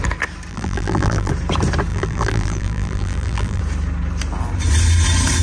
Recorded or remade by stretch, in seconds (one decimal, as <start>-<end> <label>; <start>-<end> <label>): 0.0-0.5 recorded; 0.5-1.3 remade; 1.3-1.9 recorded; 1.9-3.6 remade; 3.6-5.4 recorded